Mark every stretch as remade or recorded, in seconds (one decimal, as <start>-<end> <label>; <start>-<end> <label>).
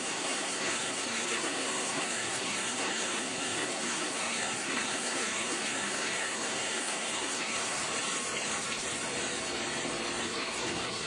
0.0-7.8 remade; 7.8-10.2 recorded; 10.2-11.1 remade